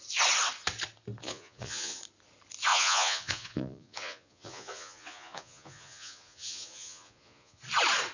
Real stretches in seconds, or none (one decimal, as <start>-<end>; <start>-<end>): 0.0-1.2; 2.0-2.7; 7.6-8.1